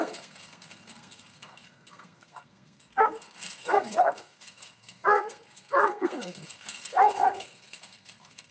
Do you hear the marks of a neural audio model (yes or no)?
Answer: yes